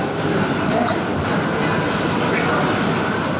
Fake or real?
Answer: real